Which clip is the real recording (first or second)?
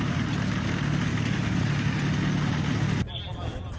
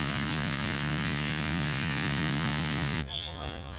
first